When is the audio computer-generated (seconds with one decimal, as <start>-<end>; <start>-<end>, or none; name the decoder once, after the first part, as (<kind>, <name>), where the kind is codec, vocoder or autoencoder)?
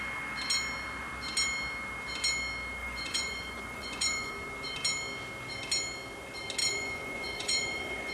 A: 2.8-4.3 (vocoder, Vocos); 6.6-8.1